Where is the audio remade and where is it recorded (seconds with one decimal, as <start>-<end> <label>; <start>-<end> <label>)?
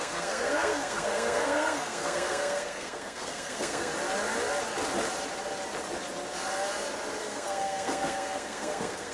0.0-3.9 remade; 3.9-7.2 recorded; 7.2-9.1 remade